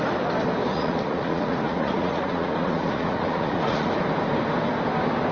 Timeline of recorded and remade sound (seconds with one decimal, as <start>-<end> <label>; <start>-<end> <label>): 0.0-0.7 recorded; 0.7-3.9 remade; 3.9-5.3 recorded